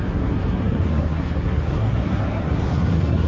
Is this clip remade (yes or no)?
yes